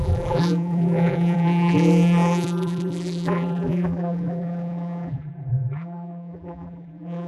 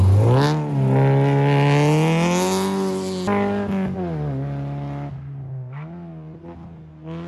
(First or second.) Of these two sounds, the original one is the second